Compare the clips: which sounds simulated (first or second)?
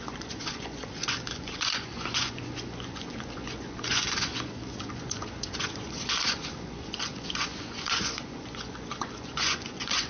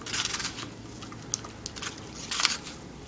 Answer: first